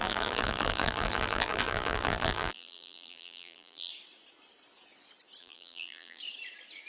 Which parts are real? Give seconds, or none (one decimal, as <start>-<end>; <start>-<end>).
3.9-5.4; 6.2-6.9